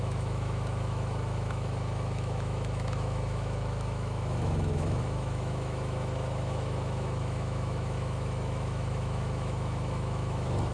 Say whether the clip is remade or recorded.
remade